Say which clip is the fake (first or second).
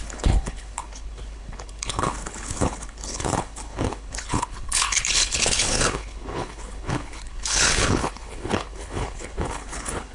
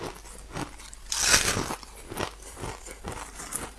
first